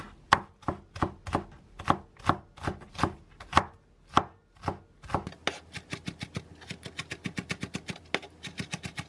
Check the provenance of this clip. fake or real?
real